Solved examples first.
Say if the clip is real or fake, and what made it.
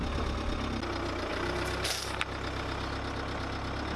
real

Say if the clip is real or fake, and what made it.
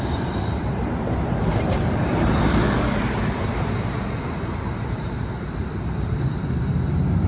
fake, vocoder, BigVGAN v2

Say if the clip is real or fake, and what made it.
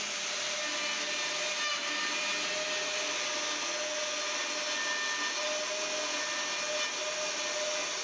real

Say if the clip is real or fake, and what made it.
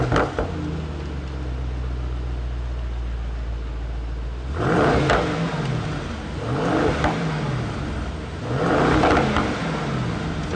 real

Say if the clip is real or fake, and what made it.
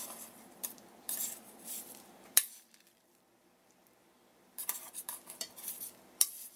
fake, vocoder, BigVGAN v2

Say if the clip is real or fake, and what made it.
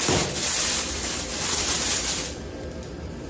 fake, vocoder, BigVGAN v2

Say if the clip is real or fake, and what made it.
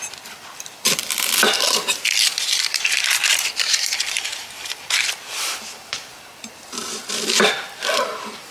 fake, vocoder, BigVGAN v2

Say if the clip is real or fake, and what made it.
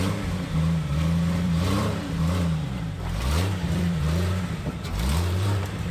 fake, vocoder, BigVGAN v2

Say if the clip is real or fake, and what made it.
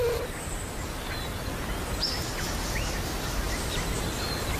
real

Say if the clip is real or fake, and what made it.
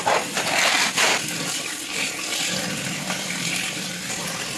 real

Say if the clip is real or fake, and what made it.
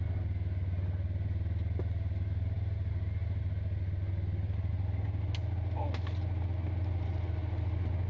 real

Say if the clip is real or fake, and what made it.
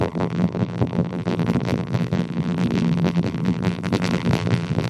fake, vocoder, BigVGAN v2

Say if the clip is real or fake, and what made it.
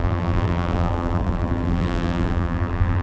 fake, vocoder, BigVGAN v2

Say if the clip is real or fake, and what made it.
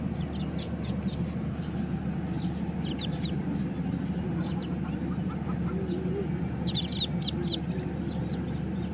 real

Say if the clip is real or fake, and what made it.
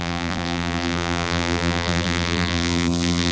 fake, vocoder, BigVGAN v2